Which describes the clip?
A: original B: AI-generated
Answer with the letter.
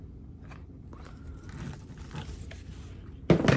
A